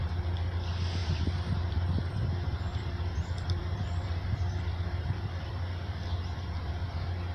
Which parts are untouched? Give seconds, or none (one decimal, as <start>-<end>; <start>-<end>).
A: 0.0-1.0; 2.2-2.7; 6.0-7.3